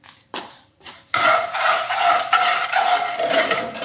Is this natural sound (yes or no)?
no